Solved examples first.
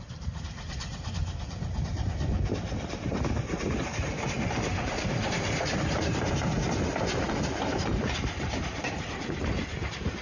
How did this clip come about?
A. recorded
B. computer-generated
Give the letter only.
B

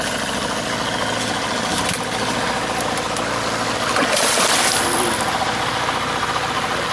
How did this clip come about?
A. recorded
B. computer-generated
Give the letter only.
A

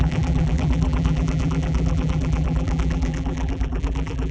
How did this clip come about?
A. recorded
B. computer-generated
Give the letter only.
B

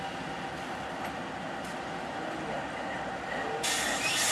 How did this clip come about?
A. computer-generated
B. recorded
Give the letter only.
B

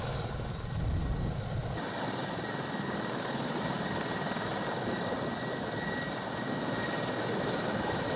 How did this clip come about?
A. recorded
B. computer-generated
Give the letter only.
A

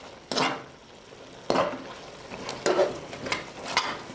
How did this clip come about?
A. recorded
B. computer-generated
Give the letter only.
A